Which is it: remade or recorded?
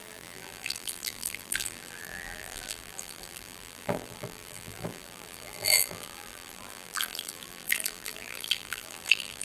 remade